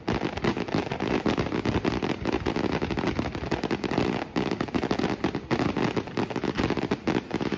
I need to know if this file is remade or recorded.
recorded